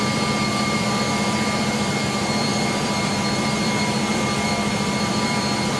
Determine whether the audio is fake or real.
fake